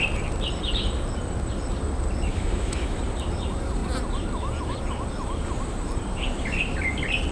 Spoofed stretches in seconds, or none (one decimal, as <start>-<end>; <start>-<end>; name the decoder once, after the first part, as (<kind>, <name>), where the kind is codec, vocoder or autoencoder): 2.3-3.0 (autoencoder, DAC-VAE)